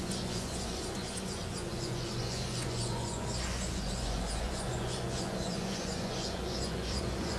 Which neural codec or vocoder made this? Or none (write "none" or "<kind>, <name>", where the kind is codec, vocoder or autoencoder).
vocoder, Vocos